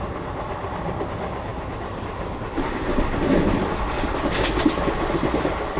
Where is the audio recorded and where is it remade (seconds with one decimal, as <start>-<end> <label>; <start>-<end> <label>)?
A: 0.0-5.8 recorded